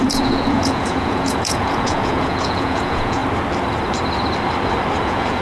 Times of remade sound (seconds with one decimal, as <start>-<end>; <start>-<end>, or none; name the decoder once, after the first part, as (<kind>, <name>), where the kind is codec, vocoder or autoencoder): 0.0-3.2 (vocoder, Vocos); 5.0-5.4